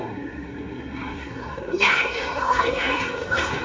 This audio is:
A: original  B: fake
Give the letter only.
B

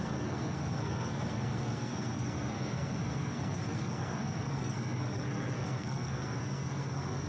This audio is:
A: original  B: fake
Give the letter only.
B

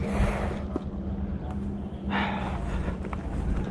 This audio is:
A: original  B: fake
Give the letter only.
A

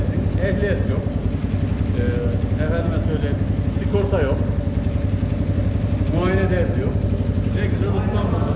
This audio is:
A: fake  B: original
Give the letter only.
B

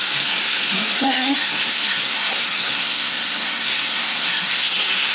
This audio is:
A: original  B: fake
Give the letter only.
B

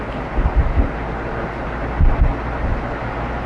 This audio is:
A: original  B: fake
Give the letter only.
A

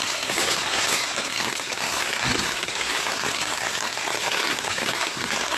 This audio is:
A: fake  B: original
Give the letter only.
A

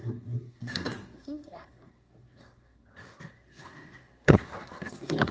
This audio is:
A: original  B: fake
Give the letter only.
B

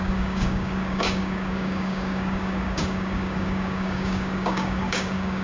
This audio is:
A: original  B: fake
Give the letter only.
B